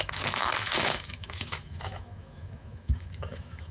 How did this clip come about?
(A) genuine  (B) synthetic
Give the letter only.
B